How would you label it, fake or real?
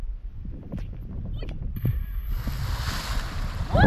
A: real